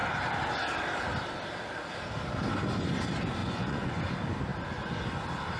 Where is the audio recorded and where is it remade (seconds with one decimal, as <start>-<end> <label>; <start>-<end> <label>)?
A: 0.0-3.4 recorded; 3.4-4.0 remade; 4.0-5.6 recorded

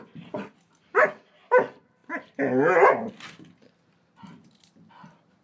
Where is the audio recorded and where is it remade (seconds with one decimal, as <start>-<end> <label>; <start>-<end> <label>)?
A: 0.0-5.4 recorded

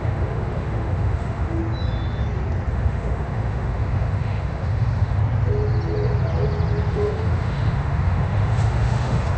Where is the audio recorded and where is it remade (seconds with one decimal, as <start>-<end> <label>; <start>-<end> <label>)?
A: 0.0-1.6 remade; 1.6-2.7 recorded; 2.7-5.2 remade; 5.2-6.9 recorded; 6.9-9.4 remade

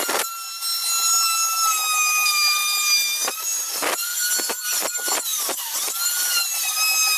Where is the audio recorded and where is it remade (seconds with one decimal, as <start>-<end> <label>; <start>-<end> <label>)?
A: 0.0-5.3 recorded; 5.3-7.2 remade

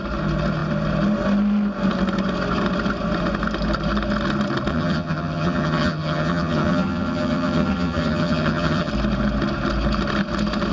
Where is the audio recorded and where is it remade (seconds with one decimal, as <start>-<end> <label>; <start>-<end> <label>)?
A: 0.0-4.7 recorded; 4.7-8.9 remade; 8.9-10.7 recorded

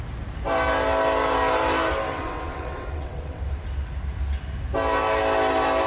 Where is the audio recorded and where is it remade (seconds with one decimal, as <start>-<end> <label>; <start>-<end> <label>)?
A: 0.0-2.1 recorded; 2.1-3.4 remade; 3.4-5.9 recorded

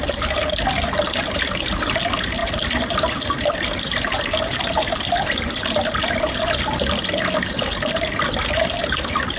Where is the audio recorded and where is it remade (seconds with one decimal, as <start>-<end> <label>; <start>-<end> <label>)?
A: 0.0-9.4 recorded

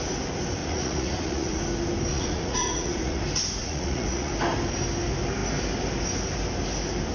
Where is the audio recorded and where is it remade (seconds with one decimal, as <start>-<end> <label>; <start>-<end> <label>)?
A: 0.0-0.6 recorded; 0.6-1.6 remade; 1.6-2.1 recorded; 2.1-3.2 remade; 3.2-3.6 recorded; 3.6-4.3 remade; 4.3-7.1 recorded